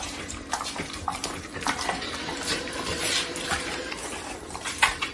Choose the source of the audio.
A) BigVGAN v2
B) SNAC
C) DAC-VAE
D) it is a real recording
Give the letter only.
A